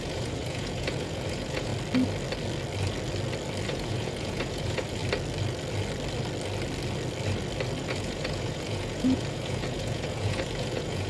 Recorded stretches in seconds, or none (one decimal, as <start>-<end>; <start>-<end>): 1.7-3.7; 5.0-7.8